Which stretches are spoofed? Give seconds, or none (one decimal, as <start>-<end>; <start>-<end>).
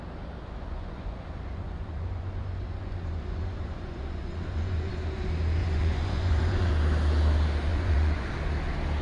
0.6-4.9; 5.6-6.7; 7.7-8.3